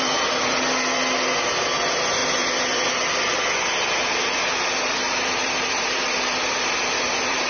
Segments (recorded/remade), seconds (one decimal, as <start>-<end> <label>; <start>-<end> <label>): 0.0-5.4 recorded; 5.4-7.5 remade